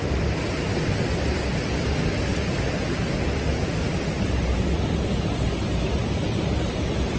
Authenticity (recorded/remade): recorded